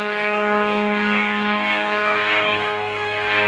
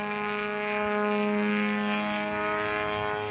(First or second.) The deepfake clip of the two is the first